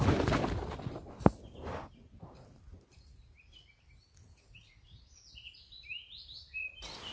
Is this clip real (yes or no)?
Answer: yes